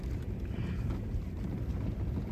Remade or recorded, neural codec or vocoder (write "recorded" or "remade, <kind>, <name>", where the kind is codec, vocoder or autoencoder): recorded